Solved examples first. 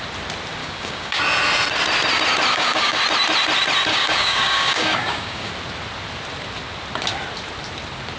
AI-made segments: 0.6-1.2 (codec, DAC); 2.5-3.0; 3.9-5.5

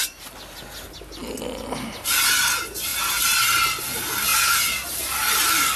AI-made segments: none